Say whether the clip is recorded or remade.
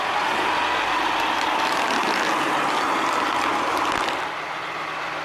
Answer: recorded